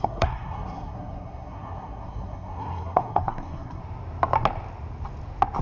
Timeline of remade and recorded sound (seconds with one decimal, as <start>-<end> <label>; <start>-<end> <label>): 0.0-3.8 remade; 3.8-5.6 recorded